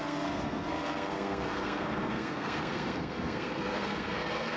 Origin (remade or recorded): remade